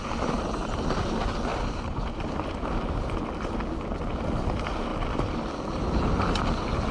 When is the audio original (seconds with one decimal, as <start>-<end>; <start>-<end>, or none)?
0.0-1.5; 3.7-4.9; 5.8-6.9